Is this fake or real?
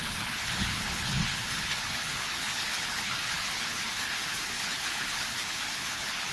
fake